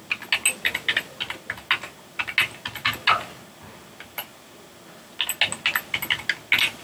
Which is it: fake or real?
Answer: real